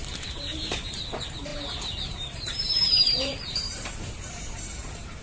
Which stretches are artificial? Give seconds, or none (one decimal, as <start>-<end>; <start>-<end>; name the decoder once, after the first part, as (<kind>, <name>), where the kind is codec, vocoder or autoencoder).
0.0-5.2 (vocoder, BigVGAN v2)